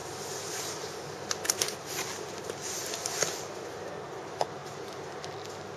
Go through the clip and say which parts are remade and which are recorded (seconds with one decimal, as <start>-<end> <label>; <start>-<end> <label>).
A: 0.0-4.6 recorded; 4.6-5.3 remade; 5.3-5.8 recorded